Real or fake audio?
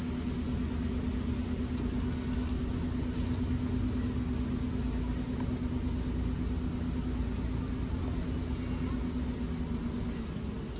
real